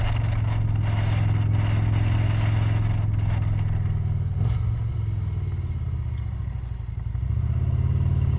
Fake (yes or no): no